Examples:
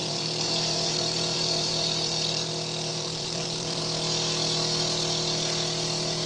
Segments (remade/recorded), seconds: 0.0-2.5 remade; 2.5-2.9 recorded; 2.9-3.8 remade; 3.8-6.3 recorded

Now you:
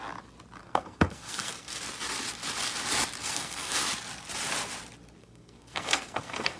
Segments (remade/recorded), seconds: 0.0-0.6 recorded; 0.6-1.8 remade; 1.8-3.2 recorded; 3.2-3.8 remade; 3.8-5.2 recorded; 5.2-6.6 remade